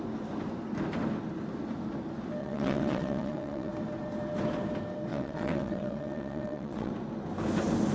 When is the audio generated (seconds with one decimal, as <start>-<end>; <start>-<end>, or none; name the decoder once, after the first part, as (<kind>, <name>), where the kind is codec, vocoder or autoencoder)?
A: 2.4-3.7 (vocoder, WaveNeXt); 5.1-6.9

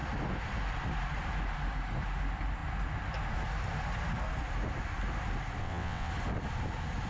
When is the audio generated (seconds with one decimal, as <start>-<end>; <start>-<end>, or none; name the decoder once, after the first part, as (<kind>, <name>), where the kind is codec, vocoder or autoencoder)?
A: 5.6-6.1 (vocoder, WaveNeXt)

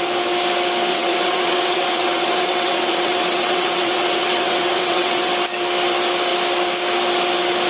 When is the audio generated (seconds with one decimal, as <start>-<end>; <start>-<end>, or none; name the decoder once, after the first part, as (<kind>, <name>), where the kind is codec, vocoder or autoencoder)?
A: 0.9-5.3 (vocoder, WaveNeXt)

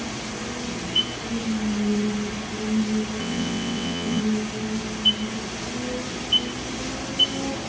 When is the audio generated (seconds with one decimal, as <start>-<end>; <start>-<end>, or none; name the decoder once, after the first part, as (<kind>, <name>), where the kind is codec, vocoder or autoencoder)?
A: 3.2-4.2 (vocoder, WaveNeXt)

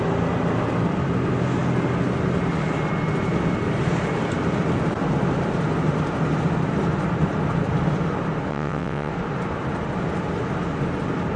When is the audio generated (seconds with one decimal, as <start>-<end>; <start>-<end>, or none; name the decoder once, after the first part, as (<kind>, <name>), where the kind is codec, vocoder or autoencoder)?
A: 8.5-9.1 (vocoder, WaveNeXt)